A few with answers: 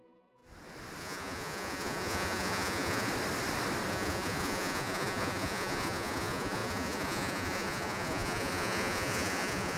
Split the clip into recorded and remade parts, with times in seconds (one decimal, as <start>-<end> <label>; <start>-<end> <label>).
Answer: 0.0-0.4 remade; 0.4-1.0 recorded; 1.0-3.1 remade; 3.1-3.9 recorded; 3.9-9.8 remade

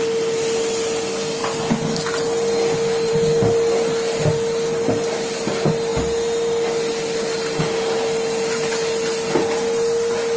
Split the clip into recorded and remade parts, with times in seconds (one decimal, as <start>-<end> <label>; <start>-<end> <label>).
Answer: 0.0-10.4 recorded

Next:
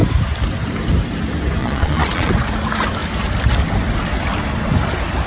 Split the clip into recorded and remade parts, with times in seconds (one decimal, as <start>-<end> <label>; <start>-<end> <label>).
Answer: 0.0-1.6 recorded; 1.6-2.3 remade; 2.3-5.3 recorded

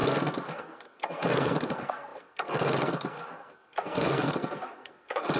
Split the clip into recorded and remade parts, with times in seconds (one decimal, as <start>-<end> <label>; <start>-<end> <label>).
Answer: 0.0-5.4 remade

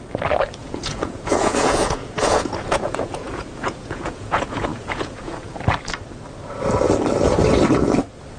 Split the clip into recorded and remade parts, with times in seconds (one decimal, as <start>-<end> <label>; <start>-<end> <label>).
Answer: 0.0-0.6 recorded; 0.6-5.6 remade; 5.6-8.4 recorded

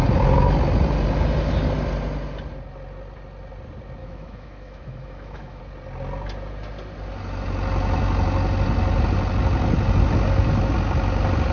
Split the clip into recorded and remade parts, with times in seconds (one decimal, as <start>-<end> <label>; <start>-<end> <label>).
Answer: 0.0-4.0 recorded; 4.0-5.6 remade; 5.6-11.5 recorded

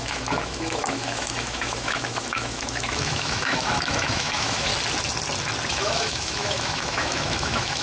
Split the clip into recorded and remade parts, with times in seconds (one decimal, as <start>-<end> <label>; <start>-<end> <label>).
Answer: 0.0-4.7 remade; 4.7-5.7 recorded; 5.7-7.8 remade

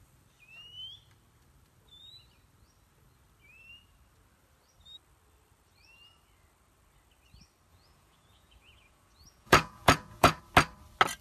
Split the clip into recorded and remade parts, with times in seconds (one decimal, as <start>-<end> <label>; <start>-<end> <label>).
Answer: 0.0-7.7 recorded; 7.7-10.4 remade; 10.4-11.2 recorded